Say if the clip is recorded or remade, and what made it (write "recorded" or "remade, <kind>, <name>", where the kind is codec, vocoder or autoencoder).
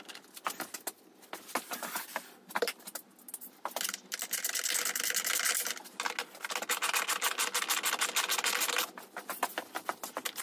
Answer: recorded